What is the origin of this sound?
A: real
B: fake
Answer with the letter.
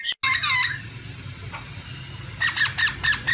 A